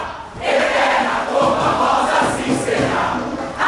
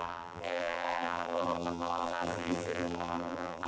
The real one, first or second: first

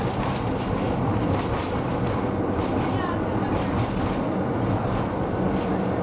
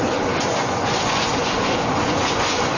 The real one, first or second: first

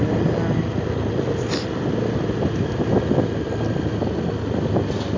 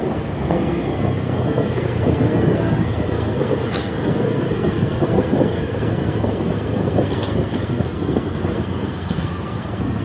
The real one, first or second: first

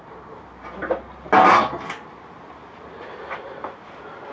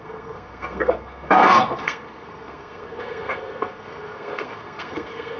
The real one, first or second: first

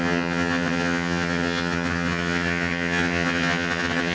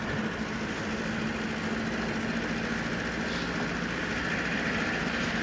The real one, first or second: second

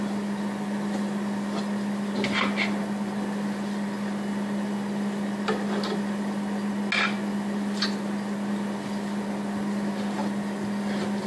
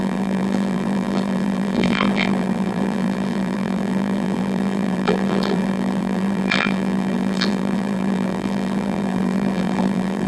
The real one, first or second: first